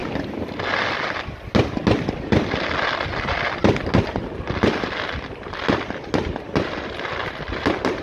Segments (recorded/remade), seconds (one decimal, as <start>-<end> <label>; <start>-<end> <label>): 0.0-8.0 recorded